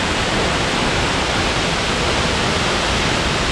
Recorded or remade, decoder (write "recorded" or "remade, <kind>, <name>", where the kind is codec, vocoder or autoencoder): recorded